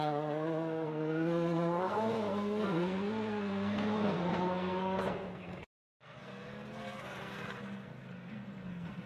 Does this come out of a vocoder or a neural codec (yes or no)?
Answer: yes